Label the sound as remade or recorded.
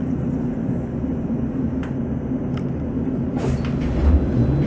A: recorded